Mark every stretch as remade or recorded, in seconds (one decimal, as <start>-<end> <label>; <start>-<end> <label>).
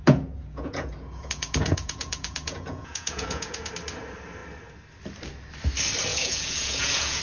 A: 0.0-3.7 remade; 3.7-6.1 recorded; 6.1-7.2 remade